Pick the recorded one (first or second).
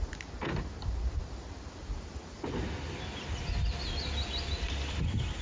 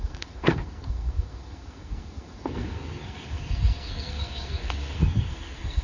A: first